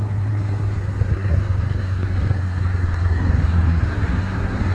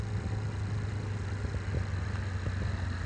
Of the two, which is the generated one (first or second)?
first